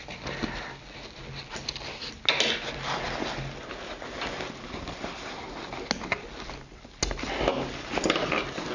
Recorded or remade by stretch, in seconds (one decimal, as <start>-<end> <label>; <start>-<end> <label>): 0.0-8.7 recorded